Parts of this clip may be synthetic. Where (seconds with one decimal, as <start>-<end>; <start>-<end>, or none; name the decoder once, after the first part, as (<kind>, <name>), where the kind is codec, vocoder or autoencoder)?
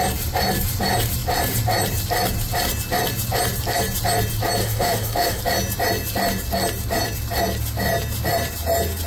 4.6-5.4 (autoencoder, DAC-VAE)